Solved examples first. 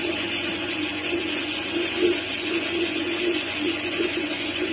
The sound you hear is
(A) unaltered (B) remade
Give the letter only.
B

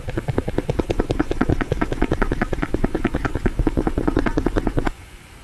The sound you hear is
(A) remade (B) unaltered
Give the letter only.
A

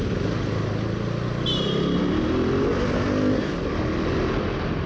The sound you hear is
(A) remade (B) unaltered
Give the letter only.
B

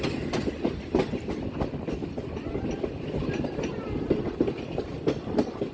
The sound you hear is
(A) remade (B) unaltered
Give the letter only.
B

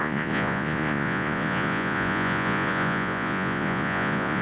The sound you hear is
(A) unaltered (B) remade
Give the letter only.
B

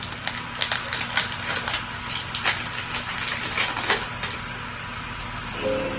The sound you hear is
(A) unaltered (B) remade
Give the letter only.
A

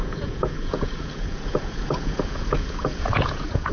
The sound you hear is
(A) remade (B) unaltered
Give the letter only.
A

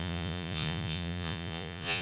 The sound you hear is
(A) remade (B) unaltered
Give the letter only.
A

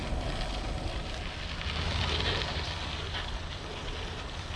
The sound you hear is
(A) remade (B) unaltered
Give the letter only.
B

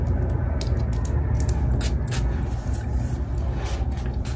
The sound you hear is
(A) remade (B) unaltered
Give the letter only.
B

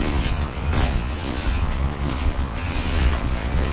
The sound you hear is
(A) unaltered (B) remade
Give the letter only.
B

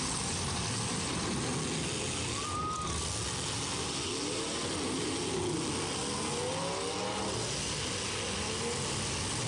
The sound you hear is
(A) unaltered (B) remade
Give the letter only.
A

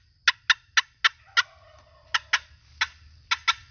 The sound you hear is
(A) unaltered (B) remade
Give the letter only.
A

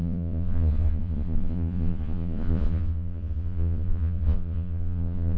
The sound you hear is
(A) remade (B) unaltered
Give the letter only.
A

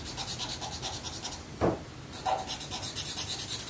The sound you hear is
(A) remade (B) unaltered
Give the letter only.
B